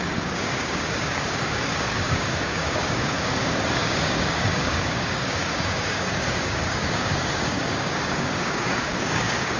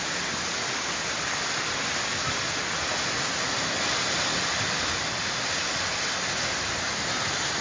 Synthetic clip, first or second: first